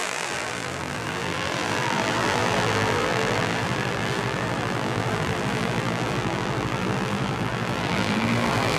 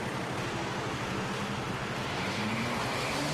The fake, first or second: first